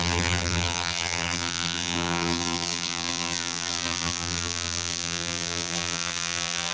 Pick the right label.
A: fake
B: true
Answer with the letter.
A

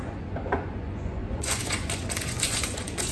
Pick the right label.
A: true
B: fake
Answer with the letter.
B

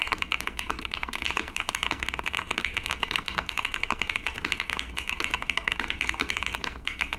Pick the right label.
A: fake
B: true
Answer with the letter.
A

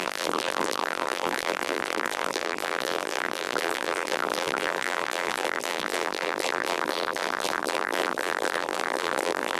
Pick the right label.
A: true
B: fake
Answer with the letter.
B